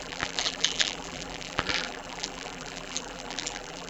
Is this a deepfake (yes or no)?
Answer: yes